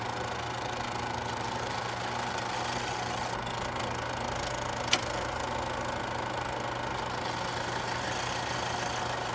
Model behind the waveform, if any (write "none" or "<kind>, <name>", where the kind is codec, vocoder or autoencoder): none